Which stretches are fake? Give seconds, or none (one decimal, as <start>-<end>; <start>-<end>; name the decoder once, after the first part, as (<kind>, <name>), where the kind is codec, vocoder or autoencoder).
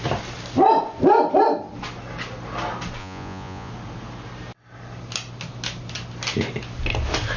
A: 3.0-3.7 (vocoder, Vocos)